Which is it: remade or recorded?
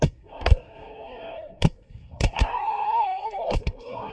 remade